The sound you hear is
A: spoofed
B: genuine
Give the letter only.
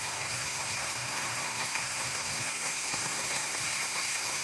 A